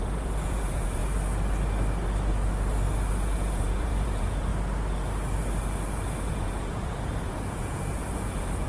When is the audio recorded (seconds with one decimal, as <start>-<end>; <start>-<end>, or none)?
1.0-3.1; 4.5-6.3